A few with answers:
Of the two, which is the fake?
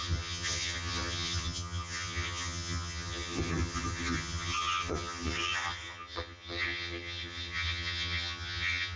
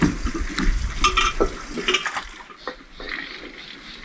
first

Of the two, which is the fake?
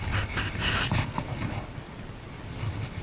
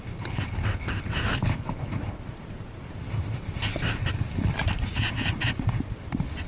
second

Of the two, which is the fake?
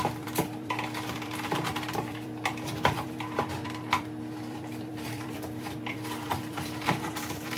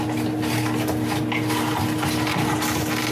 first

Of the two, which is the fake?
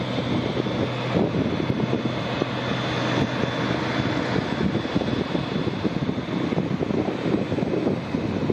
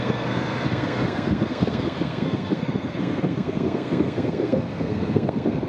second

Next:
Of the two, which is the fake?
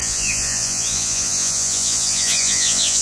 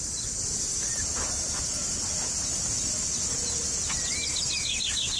first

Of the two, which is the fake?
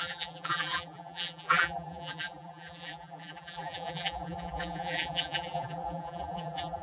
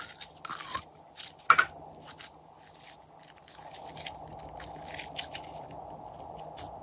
first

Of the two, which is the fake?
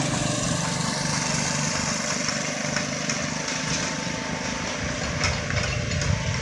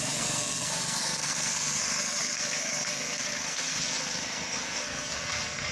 second